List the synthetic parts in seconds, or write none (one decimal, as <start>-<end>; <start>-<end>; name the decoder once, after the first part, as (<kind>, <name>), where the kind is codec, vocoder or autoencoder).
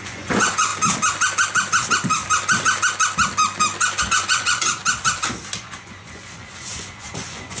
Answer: 0.0-0.7 (vocoder, Vocos); 4.0-4.8; 5.6-7.6